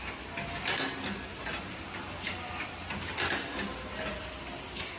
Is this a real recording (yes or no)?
yes